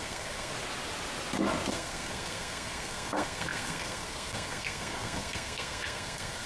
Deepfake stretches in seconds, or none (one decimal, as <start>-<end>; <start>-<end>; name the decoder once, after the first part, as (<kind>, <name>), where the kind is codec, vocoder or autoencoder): 0.0-0.5 (codec, SNAC); 1.7-6.5